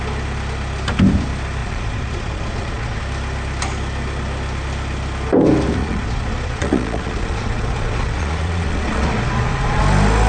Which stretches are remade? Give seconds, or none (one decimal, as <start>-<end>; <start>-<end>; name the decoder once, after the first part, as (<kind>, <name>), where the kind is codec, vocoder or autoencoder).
1.6-3.0 (vocoder, Vocos); 5.8-9.8

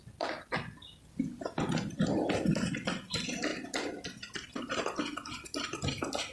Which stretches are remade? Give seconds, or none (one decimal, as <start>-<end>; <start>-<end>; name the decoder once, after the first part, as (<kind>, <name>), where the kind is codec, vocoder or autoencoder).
none